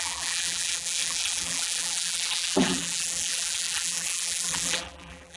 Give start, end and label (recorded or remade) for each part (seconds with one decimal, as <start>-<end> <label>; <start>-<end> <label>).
0.0-5.4 remade